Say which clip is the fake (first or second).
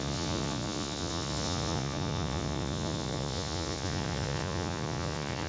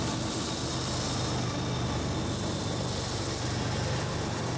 first